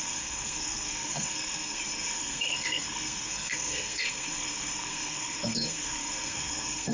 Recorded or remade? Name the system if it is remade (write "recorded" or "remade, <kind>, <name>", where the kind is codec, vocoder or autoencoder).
remade, codec, SNAC